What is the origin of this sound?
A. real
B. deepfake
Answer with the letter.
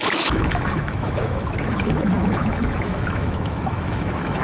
B